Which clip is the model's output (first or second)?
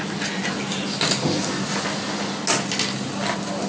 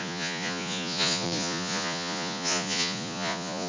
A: second